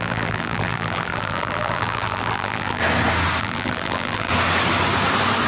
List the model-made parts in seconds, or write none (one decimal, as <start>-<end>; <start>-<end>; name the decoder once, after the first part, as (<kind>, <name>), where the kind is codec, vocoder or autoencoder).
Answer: 0.0-2.8 (vocoder, BigVGAN v2); 3.4-4.3